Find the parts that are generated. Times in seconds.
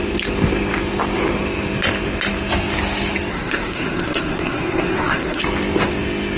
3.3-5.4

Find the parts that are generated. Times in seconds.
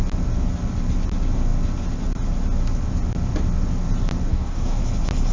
4.3-4.8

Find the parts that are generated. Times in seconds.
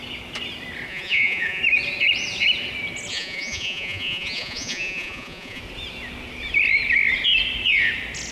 0.9-1.6; 3.1-5.6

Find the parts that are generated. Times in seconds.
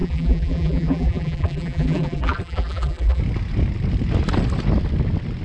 0.0-3.2